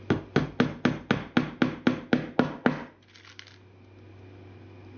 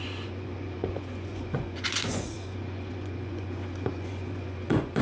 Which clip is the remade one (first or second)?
second